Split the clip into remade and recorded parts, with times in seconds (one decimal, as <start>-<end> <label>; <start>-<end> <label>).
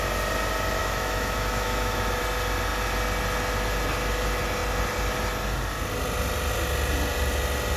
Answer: 0.0-0.8 recorded; 0.8-2.2 remade; 2.2-7.8 recorded